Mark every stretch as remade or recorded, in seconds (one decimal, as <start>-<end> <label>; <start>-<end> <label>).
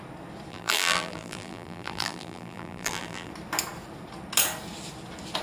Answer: 0.0-0.5 recorded; 0.5-3.3 remade; 3.3-5.4 recorded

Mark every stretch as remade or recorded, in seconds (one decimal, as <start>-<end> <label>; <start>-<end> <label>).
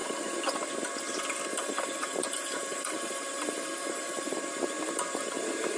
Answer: 0.0-1.5 recorded; 1.5-4.4 remade; 4.4-5.8 recorded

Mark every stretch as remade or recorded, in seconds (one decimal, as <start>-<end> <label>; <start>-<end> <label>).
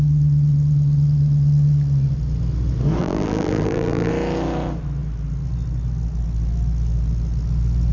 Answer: 0.0-3.0 recorded; 3.0-4.1 remade; 4.1-7.9 recorded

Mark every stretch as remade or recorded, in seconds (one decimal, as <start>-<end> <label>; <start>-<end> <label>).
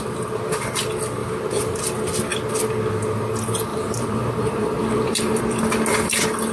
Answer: 0.0-1.2 recorded; 1.2-1.8 remade; 1.8-3.7 recorded; 3.7-5.4 remade; 5.4-6.5 recorded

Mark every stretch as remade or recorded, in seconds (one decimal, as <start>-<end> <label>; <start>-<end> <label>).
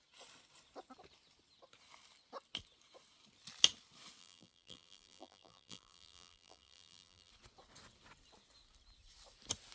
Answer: 0.0-4.2 recorded; 4.2-7.3 remade; 7.3-9.7 recorded